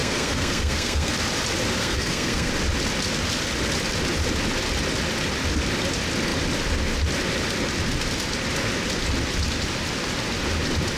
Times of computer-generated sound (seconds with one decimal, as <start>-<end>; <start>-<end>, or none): 0.0-1.1; 1.8-2.5